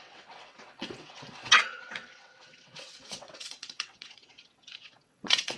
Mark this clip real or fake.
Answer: fake